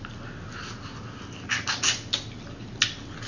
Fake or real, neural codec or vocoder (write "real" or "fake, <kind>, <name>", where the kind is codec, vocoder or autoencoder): real